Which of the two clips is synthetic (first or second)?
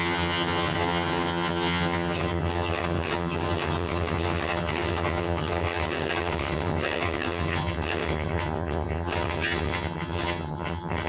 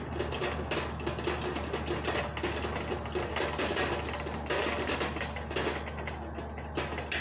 first